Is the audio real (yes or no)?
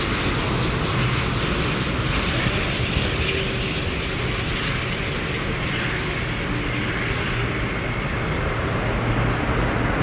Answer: yes